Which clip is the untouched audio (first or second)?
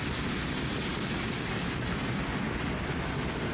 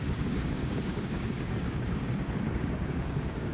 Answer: first